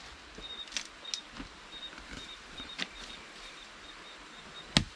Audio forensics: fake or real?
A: real